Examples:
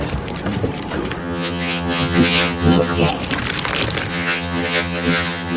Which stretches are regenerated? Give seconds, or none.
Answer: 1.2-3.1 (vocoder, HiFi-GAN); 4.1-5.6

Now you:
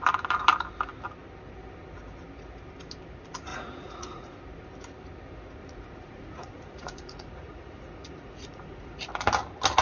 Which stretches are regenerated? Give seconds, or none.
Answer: 3.5-4.4 (vocoder, Vocos); 5.6-9.1

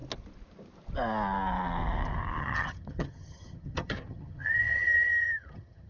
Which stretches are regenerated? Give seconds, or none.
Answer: 2.4-5.9 (vocoder, HiFi-GAN)

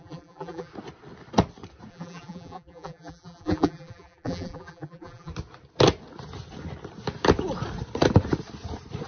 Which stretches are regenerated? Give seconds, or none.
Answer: 0.0-0.7 (vocoder, BigVGAN v2); 1.9-5.3

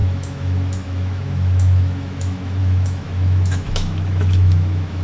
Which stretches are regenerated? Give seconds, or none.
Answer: 0.0-5.0 (autoencoder, DAC-VAE)